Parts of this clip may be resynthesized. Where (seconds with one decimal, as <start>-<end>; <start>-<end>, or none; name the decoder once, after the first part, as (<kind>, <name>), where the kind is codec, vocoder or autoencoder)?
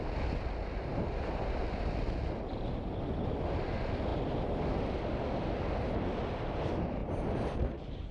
0.9-1.6 (vocoder, BigVGAN v2); 7.0-8.1